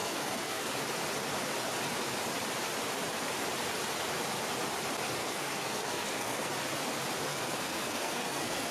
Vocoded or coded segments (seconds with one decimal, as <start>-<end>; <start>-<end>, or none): 0.0-0.7; 5.2-6.5; 7.3-8.7